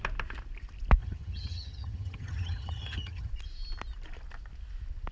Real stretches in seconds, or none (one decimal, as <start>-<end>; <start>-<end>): 0.0-1.0; 3.3-5.1